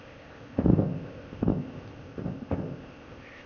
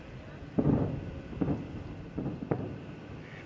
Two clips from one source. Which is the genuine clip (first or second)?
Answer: second